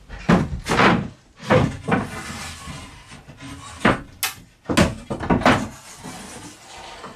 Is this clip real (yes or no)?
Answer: yes